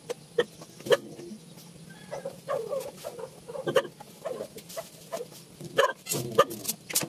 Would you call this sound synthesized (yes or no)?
no